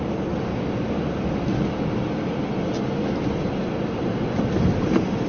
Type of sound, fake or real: real